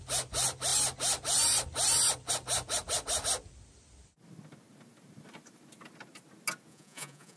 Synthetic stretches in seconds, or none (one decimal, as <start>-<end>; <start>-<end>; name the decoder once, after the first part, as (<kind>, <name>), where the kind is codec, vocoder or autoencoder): 6.7-7.4 (vocoder, Vocos)

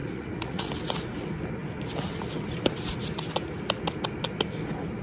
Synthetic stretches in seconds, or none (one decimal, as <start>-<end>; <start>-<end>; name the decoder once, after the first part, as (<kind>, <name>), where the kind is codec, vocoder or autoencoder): 0.0-0.7 (vocoder, Vocos)

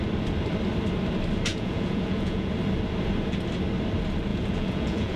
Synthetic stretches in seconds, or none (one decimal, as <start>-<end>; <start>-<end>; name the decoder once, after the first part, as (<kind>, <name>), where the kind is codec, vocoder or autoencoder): 1.5-2.5 (vocoder, Vocos); 4.3-5.2

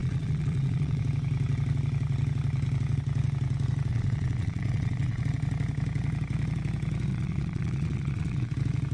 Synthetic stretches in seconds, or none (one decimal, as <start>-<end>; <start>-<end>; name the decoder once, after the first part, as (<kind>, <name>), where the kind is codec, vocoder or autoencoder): 0.0-1.0 (vocoder, Vocos); 3.9-5.2; 7.1-8.5

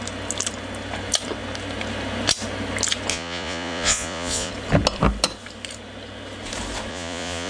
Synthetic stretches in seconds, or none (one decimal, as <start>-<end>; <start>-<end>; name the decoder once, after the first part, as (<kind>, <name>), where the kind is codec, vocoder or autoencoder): 3.1-4.5 (vocoder, Vocos); 6.9-7.5

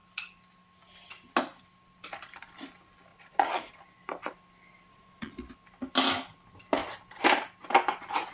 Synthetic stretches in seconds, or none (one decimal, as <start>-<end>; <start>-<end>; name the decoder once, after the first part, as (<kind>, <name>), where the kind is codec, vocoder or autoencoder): 3.1-3.8 (vocoder, Vocos); 4.9-5.5

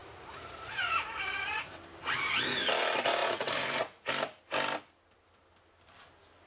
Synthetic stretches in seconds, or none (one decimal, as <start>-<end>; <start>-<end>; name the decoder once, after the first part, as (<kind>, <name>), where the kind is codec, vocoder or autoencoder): 0.0-1.7 (vocoder, Vocos); 3.2-4.1

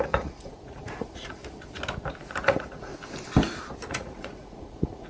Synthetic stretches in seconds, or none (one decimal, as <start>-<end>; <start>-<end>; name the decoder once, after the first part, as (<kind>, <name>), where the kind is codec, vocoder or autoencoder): 0.0-1.4 (vocoder, Vocos); 2.2-2.9; 3.9-5.1